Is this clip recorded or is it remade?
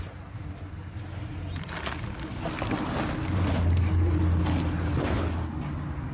recorded